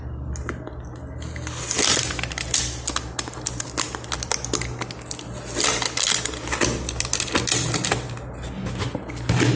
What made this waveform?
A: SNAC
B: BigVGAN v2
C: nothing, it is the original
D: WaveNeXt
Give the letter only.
C